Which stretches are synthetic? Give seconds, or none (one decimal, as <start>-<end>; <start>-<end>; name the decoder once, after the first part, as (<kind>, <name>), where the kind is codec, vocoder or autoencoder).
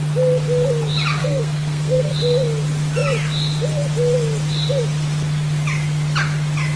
1.2-2.1 (codec, SNAC)